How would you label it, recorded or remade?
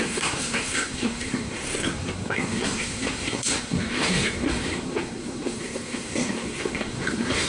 remade